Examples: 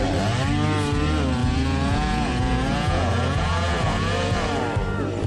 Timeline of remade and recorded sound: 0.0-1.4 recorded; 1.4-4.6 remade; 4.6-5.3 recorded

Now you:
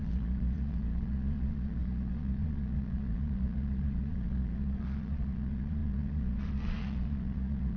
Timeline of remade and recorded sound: 0.0-7.8 remade

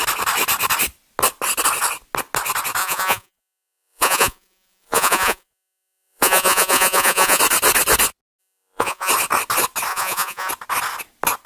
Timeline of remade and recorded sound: 0.0-2.8 recorded; 2.8-7.4 remade; 7.4-8.4 recorded; 8.4-9.1 remade; 9.1-9.9 recorded; 9.9-10.5 remade; 10.5-11.5 recorded

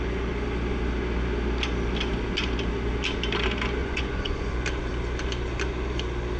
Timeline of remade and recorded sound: 0.0-3.8 recorded; 3.8-4.5 remade; 4.5-6.4 recorded

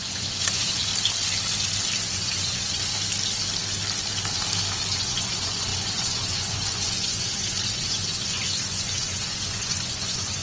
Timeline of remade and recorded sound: 0.0-0.9 remade; 0.9-2.0 recorded; 2.0-2.9 remade; 2.9-4.9 recorded; 4.9-10.4 remade

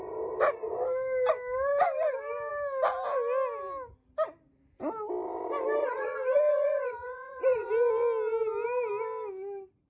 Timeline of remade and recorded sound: 0.0-5.8 recorded; 5.8-7.7 remade; 7.7-9.9 recorded

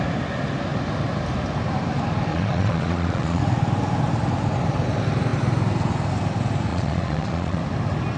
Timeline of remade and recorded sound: 0.0-2.3 recorded; 2.3-3.4 remade; 3.4-6.7 recorded; 6.7-7.6 remade; 7.6-8.2 recorded

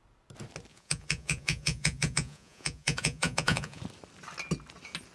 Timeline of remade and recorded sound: 0.0-0.7 recorded; 0.7-3.8 remade; 3.8-5.1 recorded